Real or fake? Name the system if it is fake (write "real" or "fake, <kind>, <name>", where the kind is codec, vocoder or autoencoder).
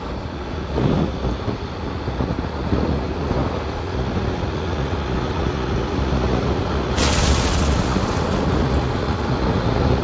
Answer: fake, vocoder, Vocos